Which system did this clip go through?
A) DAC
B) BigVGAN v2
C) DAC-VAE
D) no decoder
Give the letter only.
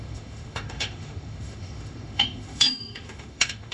C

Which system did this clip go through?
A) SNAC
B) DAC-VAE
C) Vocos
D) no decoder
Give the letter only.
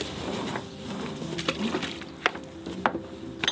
D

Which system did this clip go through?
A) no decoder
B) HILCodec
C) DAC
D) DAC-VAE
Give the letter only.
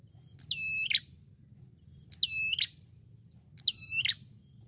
A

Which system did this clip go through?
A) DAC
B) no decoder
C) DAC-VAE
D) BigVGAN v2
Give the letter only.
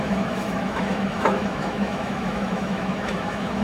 C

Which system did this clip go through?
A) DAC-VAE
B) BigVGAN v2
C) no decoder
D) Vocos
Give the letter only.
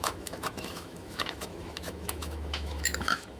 A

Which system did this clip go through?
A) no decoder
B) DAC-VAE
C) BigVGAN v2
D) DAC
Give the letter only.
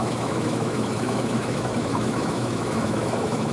B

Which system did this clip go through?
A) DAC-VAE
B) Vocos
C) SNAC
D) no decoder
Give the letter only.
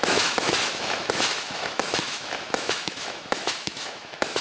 A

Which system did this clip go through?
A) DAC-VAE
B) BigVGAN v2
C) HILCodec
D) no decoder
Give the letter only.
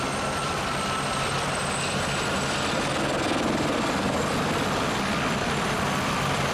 D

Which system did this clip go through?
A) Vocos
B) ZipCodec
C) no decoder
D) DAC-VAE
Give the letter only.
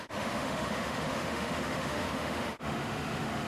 D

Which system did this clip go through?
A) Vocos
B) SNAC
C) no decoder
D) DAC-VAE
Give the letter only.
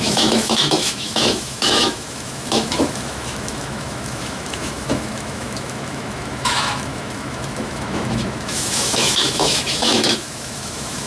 D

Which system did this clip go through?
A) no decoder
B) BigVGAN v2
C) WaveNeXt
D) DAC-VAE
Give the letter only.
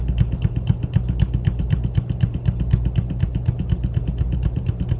A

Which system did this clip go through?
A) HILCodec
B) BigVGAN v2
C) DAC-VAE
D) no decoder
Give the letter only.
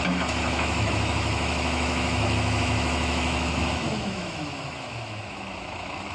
C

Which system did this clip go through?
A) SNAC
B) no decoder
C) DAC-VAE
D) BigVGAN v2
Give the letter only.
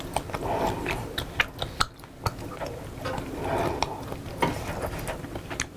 B